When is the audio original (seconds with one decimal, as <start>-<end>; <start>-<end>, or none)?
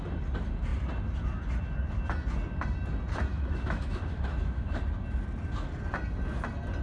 0.0-3.3; 4.8-6.8